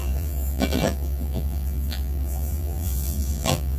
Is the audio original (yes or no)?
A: no